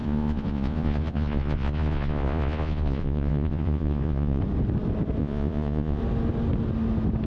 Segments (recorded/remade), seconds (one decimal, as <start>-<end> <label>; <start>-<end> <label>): 0.0-4.4 remade; 4.4-5.2 recorded; 5.2-6.0 remade; 6.0-7.3 recorded